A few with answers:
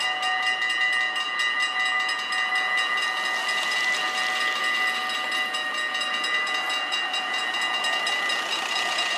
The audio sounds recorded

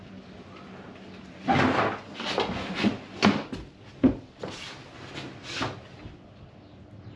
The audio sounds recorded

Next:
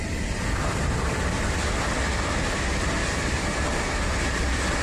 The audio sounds recorded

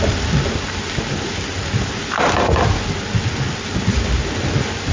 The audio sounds recorded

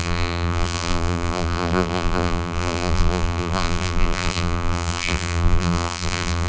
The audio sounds remade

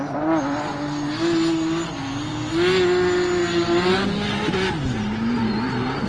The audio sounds recorded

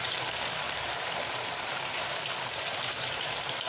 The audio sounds remade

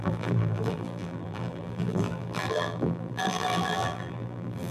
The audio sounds remade